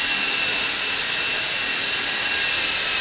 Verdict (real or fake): real